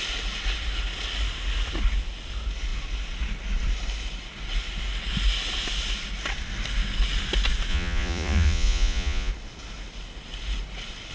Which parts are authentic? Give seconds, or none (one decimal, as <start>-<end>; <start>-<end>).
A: 0.0-7.7; 9.3-11.1